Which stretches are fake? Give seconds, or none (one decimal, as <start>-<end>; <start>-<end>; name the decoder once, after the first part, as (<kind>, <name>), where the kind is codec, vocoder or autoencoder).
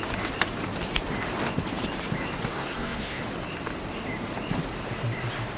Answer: 2.5-3.2 (codec, SNAC)